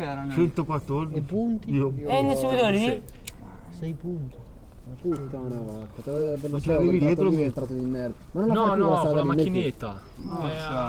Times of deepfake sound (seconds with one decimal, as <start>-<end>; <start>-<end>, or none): 5.9-7.0